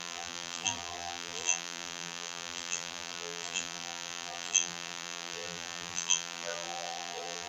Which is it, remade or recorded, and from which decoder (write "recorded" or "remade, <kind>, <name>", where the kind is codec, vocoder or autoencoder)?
remade, vocoder, BigVGAN v2